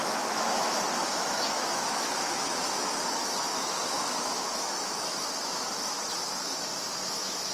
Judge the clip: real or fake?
fake